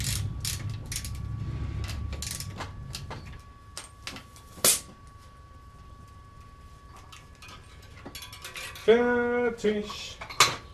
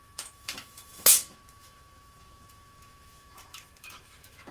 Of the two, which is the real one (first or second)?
first